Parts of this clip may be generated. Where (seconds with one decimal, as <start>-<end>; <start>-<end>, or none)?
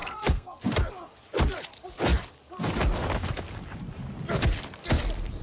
0.0-0.6